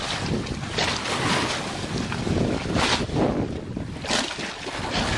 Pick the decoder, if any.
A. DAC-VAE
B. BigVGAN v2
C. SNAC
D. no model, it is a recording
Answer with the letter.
D